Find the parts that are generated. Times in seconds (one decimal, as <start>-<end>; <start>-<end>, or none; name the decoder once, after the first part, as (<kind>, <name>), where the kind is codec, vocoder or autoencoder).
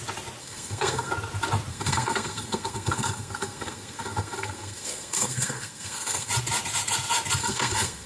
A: 0.4-1.1 (codec, SNAC); 1.7-6.3; 7.4-8.1